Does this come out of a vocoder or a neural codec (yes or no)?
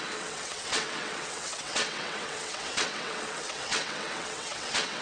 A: yes